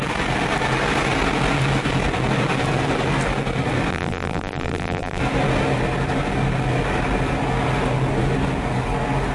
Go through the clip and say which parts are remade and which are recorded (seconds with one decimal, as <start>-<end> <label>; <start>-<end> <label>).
0.0-3.9 recorded; 3.9-5.2 remade; 5.2-9.3 recorded